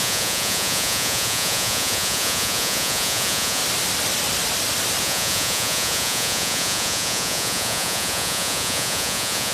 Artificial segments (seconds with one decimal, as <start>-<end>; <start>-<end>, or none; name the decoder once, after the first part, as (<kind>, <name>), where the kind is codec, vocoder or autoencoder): 0.0-3.6 (vocoder, Vocos); 5.0-9.5